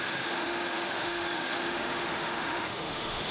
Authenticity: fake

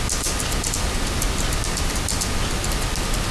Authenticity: real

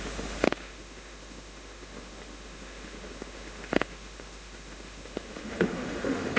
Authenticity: fake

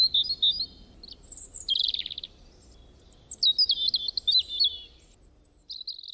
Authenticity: real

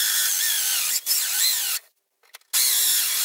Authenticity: real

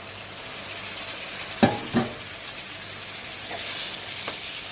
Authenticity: real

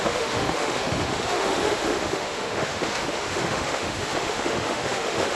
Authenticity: fake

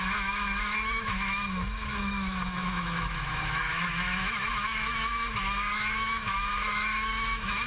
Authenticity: fake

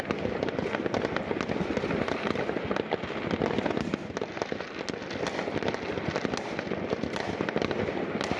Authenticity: real